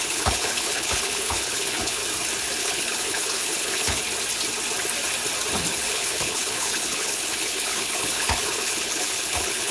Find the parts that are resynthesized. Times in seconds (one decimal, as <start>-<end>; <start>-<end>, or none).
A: 0.0-2.0; 2.6-4.0; 5.7-9.7